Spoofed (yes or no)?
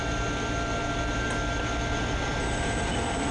no